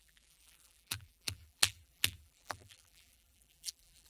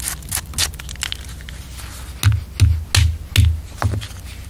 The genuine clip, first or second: second